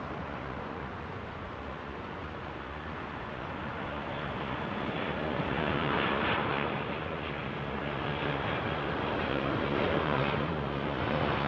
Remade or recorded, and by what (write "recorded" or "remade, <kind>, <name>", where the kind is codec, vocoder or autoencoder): remade, vocoder, Vocos